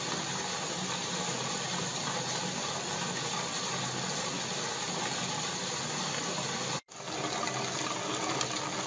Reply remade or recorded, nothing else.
recorded